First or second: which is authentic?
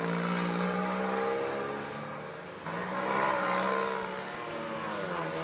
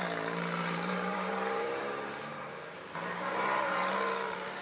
first